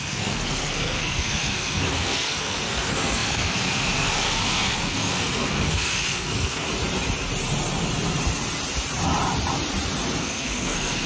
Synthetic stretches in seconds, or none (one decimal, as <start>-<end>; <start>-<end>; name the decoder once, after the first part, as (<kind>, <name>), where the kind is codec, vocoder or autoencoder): 0.0-6.7 (codec, SNAC); 10.2-11.1

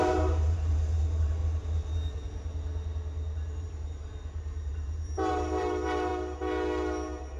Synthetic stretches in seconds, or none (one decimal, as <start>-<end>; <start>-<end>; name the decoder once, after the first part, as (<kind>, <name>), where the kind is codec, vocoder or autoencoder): 0.0-1.4 (vocoder, BigVGAN v2); 3.6-6.1